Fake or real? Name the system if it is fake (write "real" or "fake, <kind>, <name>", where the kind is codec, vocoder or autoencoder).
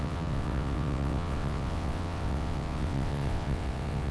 fake, vocoder, WaveNeXt